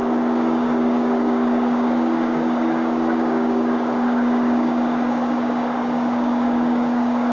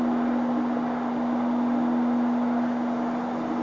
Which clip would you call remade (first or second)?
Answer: first